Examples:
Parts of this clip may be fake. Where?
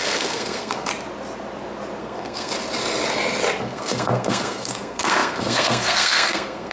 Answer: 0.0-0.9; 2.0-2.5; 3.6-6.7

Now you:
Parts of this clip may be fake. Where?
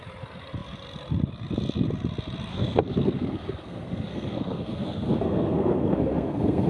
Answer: 2.5-6.7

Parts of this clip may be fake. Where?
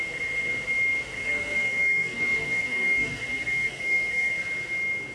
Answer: 1.2-4.3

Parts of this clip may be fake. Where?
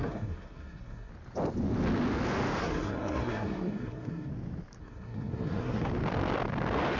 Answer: 0.0-1.1; 2.6-4.3; 4.8-5.9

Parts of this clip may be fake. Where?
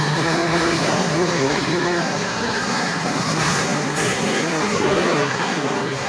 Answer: 0.0-6.1